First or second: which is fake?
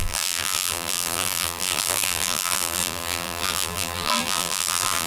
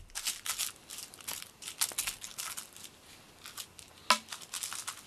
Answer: first